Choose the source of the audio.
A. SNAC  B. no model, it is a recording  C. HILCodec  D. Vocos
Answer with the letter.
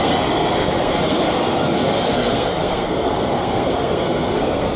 A